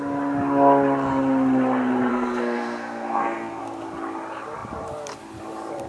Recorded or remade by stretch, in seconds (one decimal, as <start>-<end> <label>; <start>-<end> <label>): 0.0-2.1 recorded; 2.1-3.6 remade; 3.6-5.9 recorded